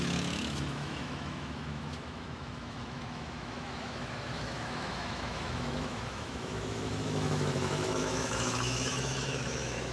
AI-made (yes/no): yes